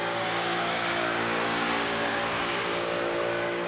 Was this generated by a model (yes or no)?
yes